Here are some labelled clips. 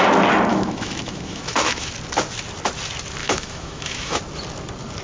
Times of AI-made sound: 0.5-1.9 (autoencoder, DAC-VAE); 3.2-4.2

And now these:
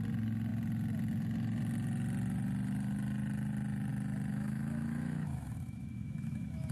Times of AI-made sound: 4.3-6.7 (autoencoder, DAC-VAE)